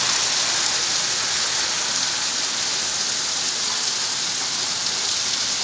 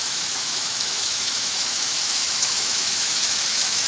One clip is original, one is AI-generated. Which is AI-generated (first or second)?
second